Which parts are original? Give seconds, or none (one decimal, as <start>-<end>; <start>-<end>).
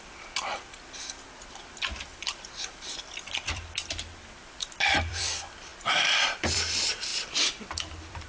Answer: 7.1-7.7